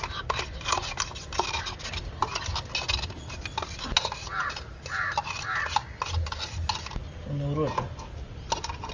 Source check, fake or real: real